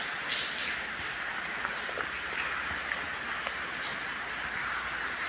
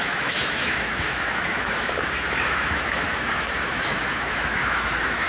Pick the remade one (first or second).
second